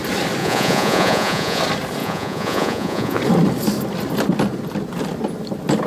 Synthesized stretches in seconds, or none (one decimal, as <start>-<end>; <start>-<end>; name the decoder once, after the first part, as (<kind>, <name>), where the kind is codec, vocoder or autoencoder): 0.4-1.6 (vocoder, Vocos); 2.0-3.2